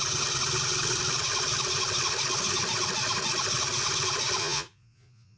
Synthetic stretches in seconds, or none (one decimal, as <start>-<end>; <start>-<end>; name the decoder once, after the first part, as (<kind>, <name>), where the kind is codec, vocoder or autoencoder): 4.4-5.4 (vocoder, Vocos)